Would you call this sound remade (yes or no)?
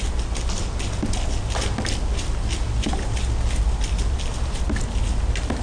no